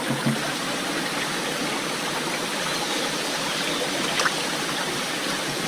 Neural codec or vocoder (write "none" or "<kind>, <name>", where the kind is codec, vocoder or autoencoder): none